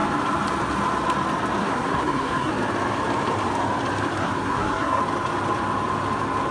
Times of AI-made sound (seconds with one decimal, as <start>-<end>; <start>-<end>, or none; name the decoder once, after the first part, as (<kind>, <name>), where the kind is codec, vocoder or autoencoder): 1.6-2.5 (codec, SNAC); 4.2-5.0